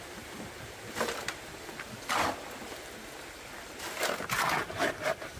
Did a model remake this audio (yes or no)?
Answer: no